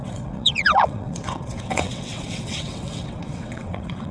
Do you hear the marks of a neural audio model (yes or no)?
yes